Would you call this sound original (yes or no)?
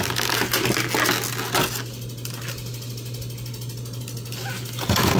yes